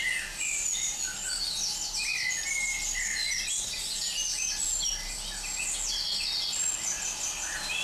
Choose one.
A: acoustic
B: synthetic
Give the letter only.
A